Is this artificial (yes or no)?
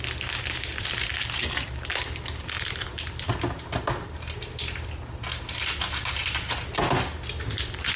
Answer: no